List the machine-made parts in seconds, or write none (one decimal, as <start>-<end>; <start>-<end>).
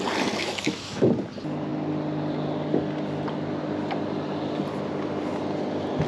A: 0.4-1.1